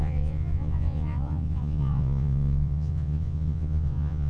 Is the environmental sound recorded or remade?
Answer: remade